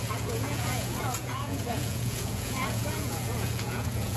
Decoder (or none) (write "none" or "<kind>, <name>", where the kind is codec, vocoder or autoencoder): vocoder, Vocos